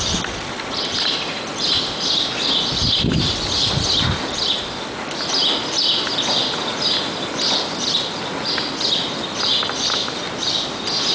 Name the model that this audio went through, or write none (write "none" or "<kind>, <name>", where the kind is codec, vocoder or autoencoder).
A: none